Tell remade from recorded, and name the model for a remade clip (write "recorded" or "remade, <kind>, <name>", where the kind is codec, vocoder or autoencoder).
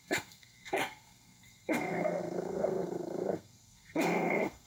remade, codec, SNAC